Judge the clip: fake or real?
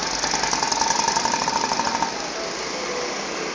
real